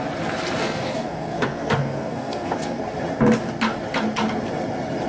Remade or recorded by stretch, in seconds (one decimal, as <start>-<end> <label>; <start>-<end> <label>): 0.0-0.6 recorded; 0.6-2.8 remade; 2.8-5.1 recorded